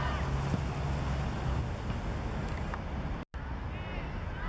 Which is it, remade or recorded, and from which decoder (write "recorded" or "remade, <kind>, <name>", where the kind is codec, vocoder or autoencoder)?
recorded